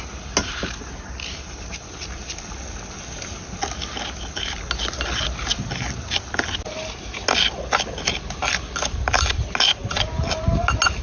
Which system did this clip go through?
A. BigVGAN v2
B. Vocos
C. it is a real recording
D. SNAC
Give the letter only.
C